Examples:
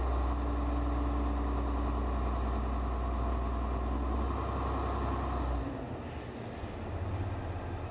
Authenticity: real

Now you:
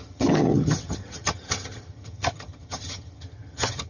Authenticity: fake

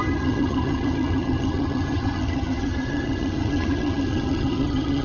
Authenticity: fake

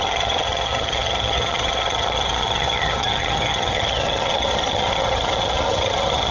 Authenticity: fake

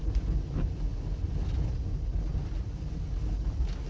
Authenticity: real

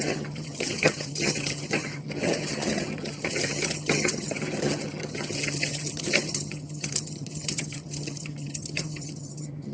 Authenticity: fake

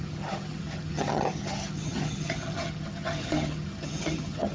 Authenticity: fake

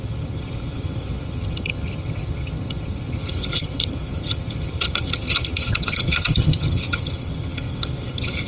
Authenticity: fake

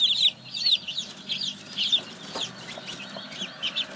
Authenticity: real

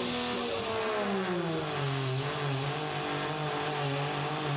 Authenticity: real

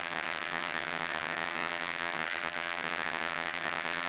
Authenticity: fake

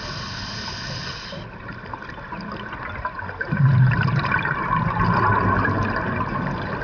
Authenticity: real